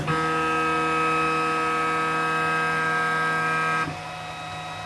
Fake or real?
real